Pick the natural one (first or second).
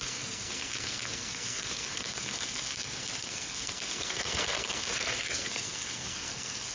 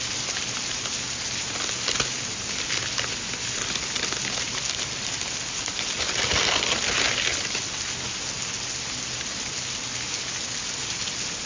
second